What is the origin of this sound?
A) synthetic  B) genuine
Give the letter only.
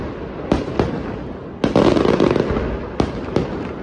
B